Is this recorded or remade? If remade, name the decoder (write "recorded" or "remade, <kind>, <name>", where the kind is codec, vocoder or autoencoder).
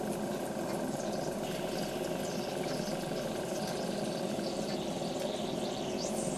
recorded